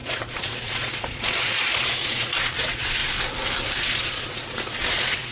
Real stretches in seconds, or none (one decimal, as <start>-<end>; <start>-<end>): 3.0-3.8

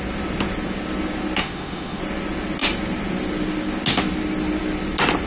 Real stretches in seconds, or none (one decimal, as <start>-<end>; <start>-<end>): 0.0-1.4; 2.0-5.3